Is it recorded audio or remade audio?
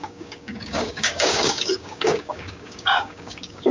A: remade